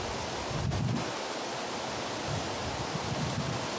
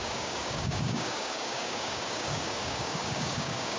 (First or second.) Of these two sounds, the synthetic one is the second